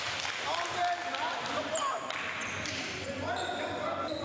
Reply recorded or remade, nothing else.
recorded